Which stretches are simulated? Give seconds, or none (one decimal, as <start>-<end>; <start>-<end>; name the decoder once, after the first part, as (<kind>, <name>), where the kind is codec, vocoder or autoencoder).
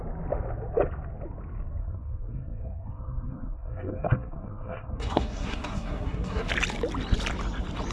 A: 1.8-6.5 (codec, SNAC)